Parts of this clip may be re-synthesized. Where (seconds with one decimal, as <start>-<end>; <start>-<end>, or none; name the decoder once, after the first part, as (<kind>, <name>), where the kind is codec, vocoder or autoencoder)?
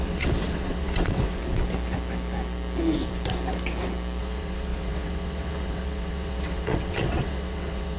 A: 0.0-1.4 (vocoder, WaveNeXt); 4.2-8.0